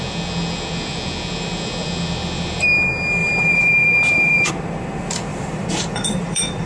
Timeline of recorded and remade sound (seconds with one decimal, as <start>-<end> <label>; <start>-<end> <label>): 0.0-3.2 recorded; 3.2-4.5 remade; 4.5-5.3 recorded; 5.3-6.7 remade